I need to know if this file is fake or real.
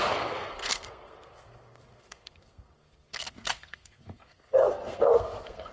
fake